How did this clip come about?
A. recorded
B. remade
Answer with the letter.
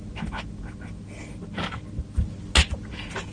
A